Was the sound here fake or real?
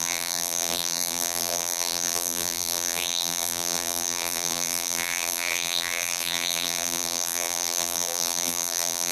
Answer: fake